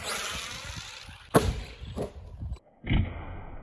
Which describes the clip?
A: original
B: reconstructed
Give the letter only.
A